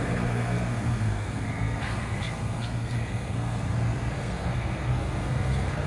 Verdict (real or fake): fake